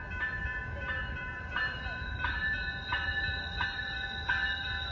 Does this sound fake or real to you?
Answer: fake